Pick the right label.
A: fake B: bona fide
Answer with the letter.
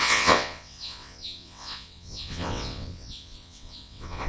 A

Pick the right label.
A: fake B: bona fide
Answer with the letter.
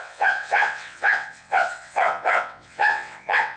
A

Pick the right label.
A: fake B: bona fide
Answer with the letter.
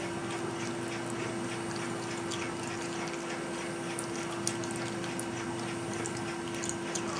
B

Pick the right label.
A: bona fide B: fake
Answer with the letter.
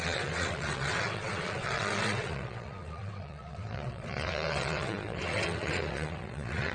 B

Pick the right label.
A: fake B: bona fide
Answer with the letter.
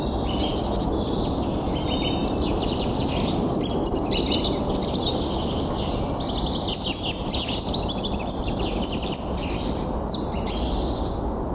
B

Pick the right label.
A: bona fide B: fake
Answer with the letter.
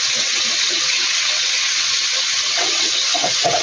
B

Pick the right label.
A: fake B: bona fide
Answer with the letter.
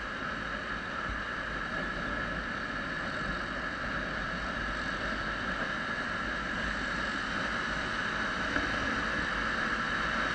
B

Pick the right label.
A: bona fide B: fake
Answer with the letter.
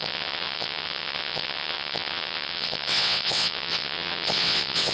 B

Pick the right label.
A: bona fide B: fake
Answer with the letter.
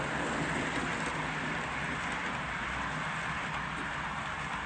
A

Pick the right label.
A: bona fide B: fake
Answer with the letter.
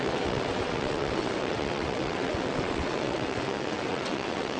B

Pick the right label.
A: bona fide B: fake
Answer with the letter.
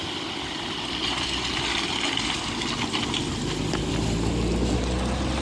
A